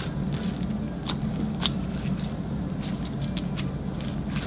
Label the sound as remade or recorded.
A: recorded